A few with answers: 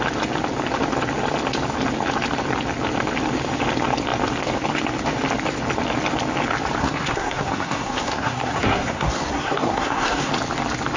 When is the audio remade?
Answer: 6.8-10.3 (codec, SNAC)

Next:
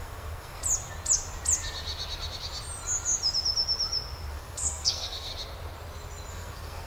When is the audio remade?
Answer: 0.0-0.6 (codec, SNAC); 4.3-5.3; 6.3-6.9

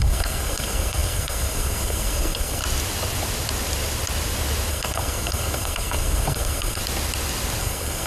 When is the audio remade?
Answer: 0.0-2.6 (codec, SNAC); 4.7-6.8; 7.6-8.1

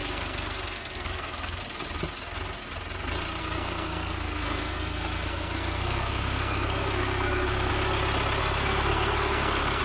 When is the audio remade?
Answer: 0.0-1.6 (codec, SNAC); 3.4-7.7; 8.4-9.8

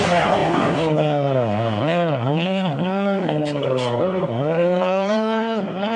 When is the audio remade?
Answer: 0.0-6.0 (codec, SNAC)

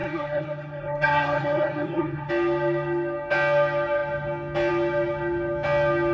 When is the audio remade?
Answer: 0.0-2.3 (codec, SNAC)